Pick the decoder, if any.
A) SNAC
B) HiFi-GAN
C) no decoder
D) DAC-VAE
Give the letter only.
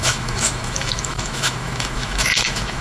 D